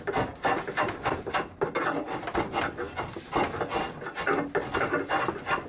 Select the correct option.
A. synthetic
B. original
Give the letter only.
B